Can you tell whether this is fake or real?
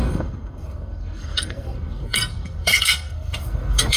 fake